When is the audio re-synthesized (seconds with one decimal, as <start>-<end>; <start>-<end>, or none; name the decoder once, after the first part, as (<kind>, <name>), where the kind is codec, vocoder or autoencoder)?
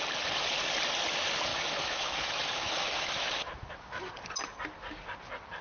1.5-4.1 (autoencoder, DAC-VAE)